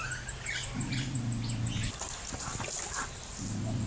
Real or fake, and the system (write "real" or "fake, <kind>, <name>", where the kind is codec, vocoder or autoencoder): real